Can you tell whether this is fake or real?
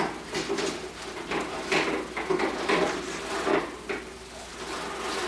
real